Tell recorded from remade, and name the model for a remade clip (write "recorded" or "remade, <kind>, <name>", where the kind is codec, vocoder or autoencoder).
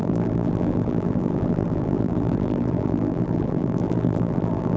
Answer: remade, vocoder, BigVGAN v2